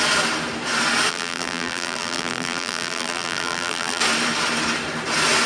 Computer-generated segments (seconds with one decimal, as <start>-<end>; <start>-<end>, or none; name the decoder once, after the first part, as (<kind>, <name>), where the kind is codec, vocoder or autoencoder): 1.1-4.0 (vocoder, BigVGAN v2)